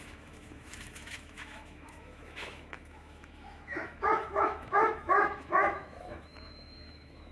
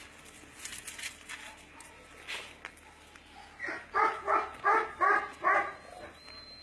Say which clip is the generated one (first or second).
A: first